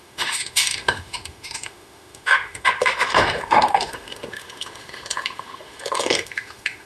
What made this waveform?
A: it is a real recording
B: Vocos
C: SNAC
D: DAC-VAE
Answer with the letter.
D